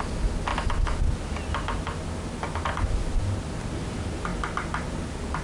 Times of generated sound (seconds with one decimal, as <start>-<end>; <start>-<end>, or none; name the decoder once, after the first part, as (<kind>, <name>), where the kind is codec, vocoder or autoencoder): 0.0-0.5 (vocoder, BigVGAN v2); 3.7-4.3; 5.0-5.4